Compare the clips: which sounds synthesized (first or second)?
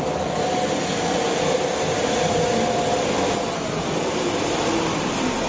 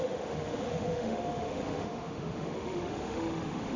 second